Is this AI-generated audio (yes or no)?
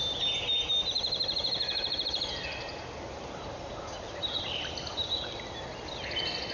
no